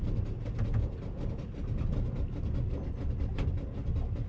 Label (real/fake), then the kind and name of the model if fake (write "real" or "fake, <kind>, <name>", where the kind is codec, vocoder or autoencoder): real